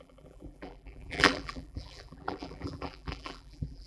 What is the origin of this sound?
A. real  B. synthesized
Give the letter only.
B